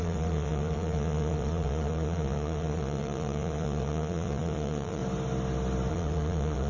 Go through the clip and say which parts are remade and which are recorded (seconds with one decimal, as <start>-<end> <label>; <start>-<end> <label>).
0.0-5.0 remade; 5.0-5.9 recorded; 5.9-6.7 remade